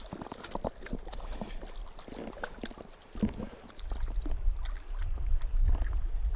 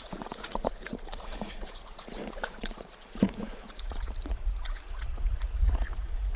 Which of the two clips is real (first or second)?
first